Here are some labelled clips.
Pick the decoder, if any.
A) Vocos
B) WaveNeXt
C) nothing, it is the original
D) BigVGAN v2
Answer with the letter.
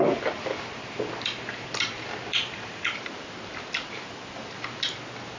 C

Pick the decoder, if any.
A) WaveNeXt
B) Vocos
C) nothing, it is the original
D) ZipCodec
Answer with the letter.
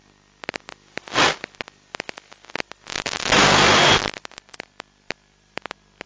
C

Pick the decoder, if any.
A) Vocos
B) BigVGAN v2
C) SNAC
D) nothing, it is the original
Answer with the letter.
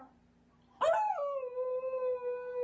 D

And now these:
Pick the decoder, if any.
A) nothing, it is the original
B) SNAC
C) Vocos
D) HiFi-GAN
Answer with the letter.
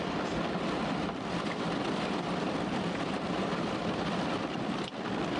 A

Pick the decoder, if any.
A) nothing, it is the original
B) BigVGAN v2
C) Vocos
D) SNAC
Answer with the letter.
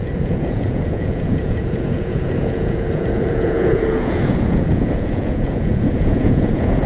C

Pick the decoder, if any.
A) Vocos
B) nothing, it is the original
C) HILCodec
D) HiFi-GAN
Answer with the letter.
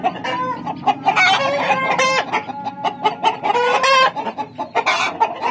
B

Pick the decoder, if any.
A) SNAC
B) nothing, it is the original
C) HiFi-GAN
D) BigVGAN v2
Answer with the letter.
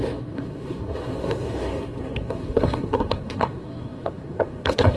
A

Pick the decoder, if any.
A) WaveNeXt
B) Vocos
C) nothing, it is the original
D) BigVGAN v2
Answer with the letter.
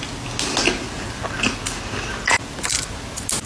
C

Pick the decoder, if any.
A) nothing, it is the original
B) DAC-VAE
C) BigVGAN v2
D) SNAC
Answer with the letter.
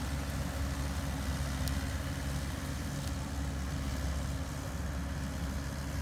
A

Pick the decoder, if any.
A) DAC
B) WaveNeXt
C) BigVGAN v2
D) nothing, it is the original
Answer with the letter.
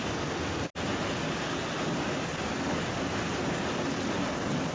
D